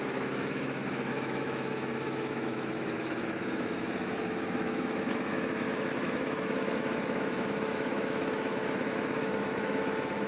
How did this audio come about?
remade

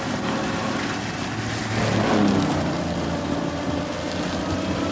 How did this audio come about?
recorded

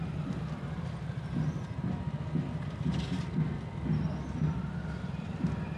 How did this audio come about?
recorded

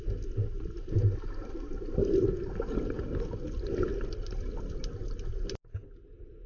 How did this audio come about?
recorded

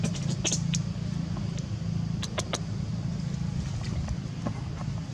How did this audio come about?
recorded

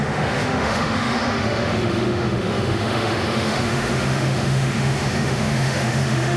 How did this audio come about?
remade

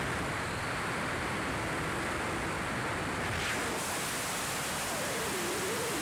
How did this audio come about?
recorded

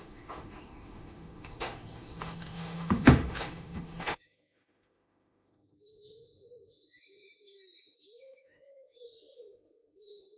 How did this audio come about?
remade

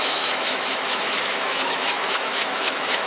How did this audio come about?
remade